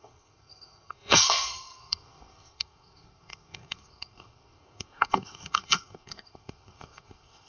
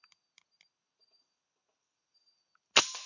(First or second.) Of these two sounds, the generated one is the first